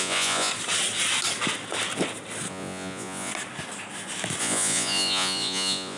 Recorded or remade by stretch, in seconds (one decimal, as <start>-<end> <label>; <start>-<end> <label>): 0.0-0.5 remade; 0.5-2.5 recorded; 2.5-3.3 remade; 3.3-4.4 recorded; 4.4-6.0 remade